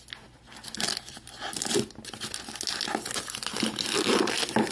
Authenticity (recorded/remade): recorded